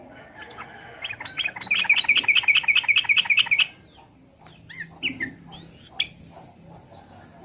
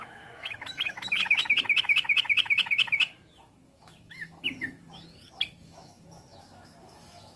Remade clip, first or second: second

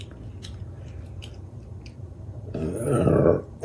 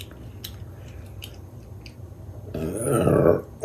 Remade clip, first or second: first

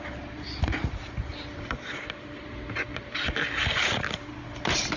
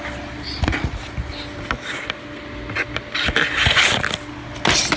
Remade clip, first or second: first